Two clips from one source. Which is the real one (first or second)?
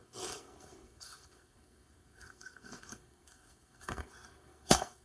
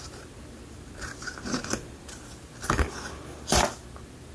second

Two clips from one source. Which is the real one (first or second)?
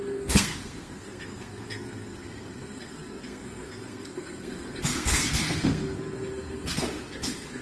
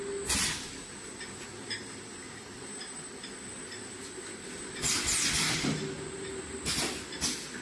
second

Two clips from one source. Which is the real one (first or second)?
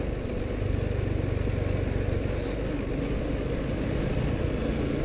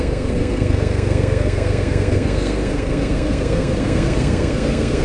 first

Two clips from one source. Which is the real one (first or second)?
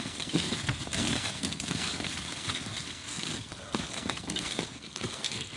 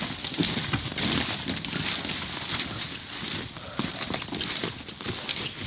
second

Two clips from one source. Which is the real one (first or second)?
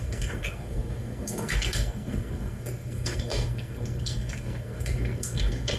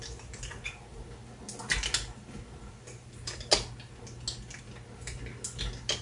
second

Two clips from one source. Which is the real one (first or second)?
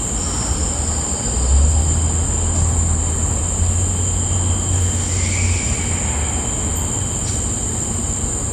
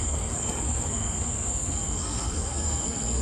first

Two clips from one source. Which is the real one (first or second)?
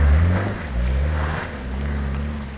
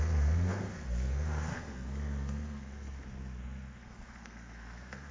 first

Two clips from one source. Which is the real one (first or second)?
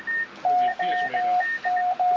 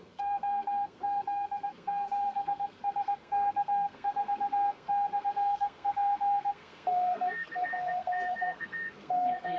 first